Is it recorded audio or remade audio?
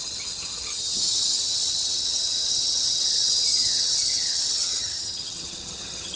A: remade